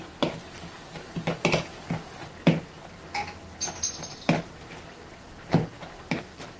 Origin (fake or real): real